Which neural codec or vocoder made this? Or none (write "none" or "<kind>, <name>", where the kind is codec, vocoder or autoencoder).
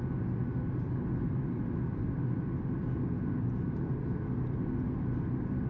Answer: none